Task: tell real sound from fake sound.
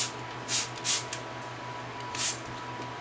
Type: real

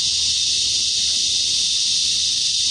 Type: real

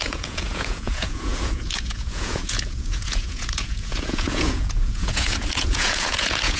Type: fake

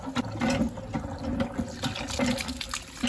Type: real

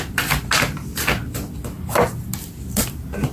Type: real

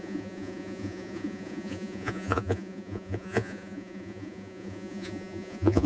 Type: fake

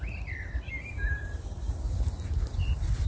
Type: real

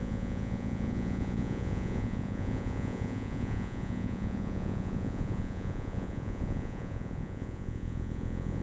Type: fake